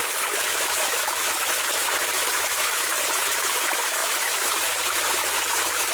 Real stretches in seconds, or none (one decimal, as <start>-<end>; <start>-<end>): none